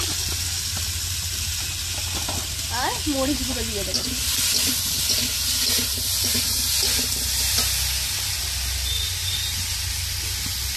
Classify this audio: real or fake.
real